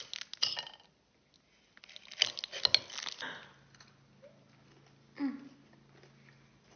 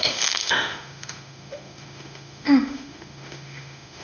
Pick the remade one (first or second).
second